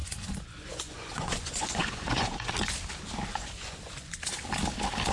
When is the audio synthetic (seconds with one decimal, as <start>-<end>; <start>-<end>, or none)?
0.0-2.5; 3.3-4.1